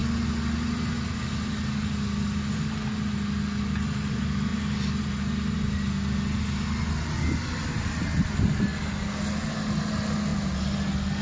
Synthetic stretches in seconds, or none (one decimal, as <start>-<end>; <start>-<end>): none